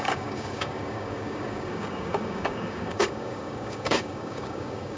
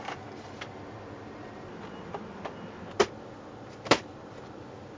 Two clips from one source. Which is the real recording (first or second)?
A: second